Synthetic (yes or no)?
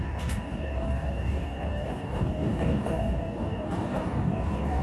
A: yes